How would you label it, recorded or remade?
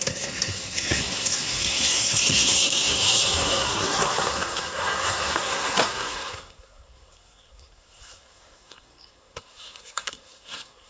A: remade